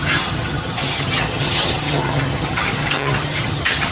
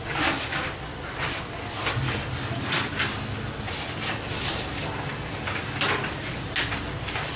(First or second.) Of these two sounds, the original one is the second